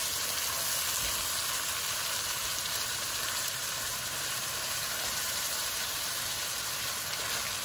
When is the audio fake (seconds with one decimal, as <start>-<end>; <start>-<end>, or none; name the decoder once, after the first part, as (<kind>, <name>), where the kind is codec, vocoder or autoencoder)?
2.4-7.0 (vocoder, BigVGAN v2)